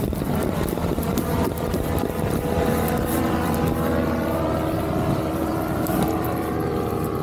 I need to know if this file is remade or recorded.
remade